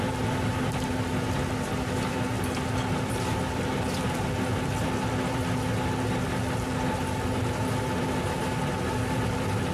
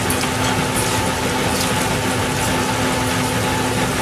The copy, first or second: first